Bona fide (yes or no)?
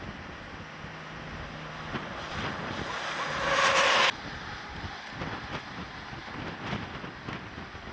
yes